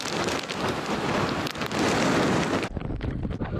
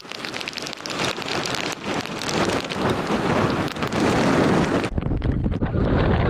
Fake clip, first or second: second